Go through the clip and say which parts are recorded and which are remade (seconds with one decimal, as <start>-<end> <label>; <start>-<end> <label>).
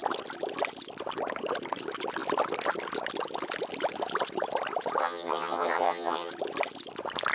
0.0-5.0 recorded; 5.0-6.3 remade; 6.3-7.3 recorded